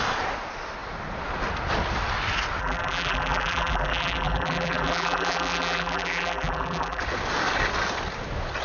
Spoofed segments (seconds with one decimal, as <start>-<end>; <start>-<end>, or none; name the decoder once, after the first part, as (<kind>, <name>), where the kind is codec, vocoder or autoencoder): 2.6-7.0 (vocoder, BigVGAN v2)

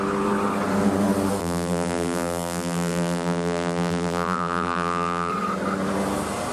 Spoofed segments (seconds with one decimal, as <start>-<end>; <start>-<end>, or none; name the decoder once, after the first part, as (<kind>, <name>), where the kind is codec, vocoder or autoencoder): 1.4-5.3 (vocoder, BigVGAN v2)

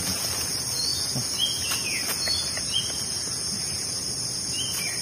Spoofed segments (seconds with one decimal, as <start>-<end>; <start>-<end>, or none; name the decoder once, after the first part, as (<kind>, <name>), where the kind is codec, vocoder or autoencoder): none